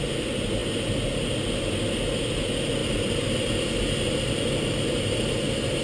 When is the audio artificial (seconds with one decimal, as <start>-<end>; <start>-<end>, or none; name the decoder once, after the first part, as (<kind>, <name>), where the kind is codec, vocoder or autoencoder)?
none